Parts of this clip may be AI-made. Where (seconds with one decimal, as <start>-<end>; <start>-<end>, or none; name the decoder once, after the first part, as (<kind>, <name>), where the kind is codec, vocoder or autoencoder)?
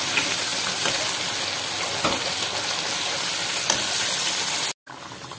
none